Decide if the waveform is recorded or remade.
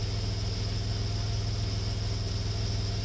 recorded